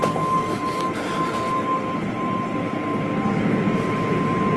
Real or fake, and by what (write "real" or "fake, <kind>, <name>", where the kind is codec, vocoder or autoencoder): real